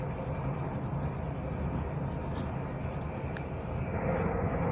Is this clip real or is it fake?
real